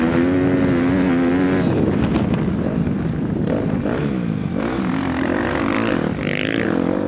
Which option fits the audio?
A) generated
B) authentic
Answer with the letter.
B